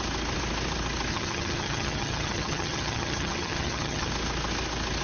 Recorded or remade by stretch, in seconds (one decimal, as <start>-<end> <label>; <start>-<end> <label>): 0.0-1.1 recorded; 1.1-4.1 remade; 4.1-5.0 recorded